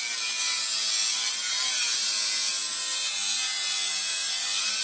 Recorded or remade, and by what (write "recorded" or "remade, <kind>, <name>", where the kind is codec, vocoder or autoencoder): recorded